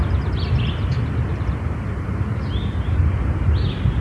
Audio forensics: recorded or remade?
recorded